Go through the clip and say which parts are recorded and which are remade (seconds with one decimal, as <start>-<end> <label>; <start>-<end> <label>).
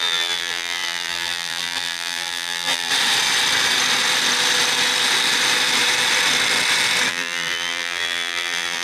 0.0-2.9 remade; 2.9-7.1 recorded; 7.1-8.8 remade